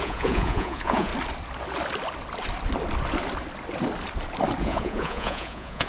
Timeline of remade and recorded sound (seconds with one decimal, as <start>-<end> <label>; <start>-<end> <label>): 0.0-1.1 remade; 1.1-4.6 recorded; 4.6-5.9 remade

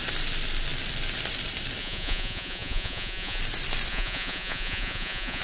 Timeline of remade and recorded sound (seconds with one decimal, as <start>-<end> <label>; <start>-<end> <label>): 0.0-1.8 recorded; 1.8-3.4 remade; 3.4-3.9 recorded; 3.9-5.4 remade

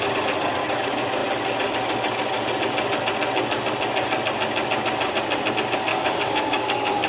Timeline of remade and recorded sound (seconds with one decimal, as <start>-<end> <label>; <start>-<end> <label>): 0.0-5.9 recorded; 5.9-7.1 remade

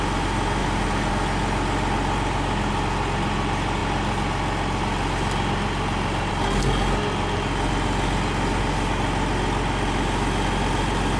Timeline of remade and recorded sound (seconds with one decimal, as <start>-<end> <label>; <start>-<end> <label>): 0.0-0.6 recorded; 0.6-1.1 remade; 1.1-11.2 recorded

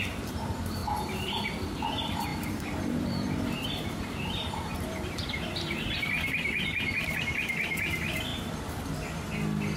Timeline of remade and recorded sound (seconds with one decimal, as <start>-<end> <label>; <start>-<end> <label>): 0.0-0.8 remade; 0.8-1.6 recorded; 1.6-8.3 remade; 8.3-9.8 recorded

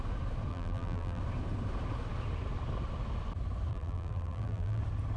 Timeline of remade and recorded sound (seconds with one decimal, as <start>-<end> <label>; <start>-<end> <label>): 0.0-0.5 recorded; 0.5-1.2 remade; 1.2-3.7 recorded; 3.7-4.8 remade; 4.8-5.2 recorded